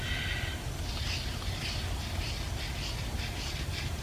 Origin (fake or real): real